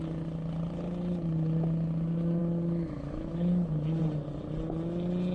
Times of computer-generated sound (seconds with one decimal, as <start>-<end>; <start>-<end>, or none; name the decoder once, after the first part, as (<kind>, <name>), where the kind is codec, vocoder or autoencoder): 2.4-4.0 (autoencoder, DAC-VAE)